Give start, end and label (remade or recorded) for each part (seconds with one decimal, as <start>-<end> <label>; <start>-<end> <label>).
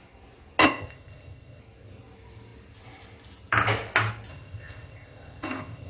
0.0-0.6 recorded; 0.6-1.6 remade; 1.6-4.3 recorded; 4.3-5.9 remade